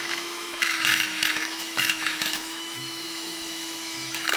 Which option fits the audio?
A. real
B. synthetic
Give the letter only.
B